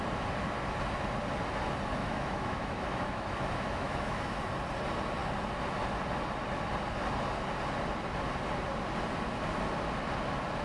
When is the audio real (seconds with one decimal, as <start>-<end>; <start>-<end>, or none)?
0.0-2.0; 4.4-10.6

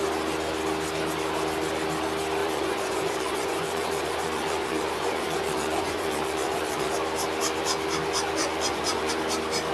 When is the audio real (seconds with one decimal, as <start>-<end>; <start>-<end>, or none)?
0.0-2.4; 6.9-8.4; 9.1-9.7

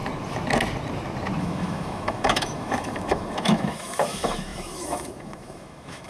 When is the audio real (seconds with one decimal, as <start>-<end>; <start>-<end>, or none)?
0.0-1.4

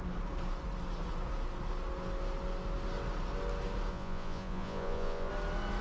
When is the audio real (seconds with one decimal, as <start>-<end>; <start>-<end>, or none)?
0.0-3.9; 5.3-5.8

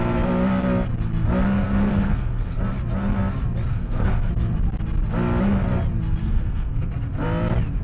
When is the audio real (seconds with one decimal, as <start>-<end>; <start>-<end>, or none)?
0.0-1.9; 2.6-3.7; 4.3-6.2; 6.9-7.8

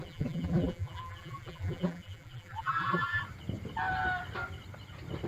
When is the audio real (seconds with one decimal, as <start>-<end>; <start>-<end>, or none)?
3.2-5.3

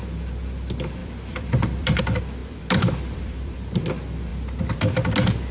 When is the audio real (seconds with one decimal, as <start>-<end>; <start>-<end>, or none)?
0.0-1.0; 2.0-2.4; 3.8-5.5